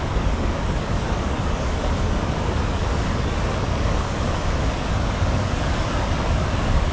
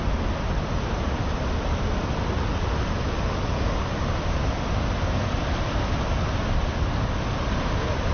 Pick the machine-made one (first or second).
first